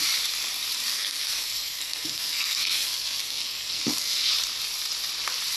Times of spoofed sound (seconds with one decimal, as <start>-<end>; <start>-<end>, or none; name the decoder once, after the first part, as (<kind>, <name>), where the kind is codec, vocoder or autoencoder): 0.9-4.3 (codec, SNAC)